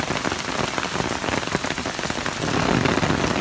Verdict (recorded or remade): recorded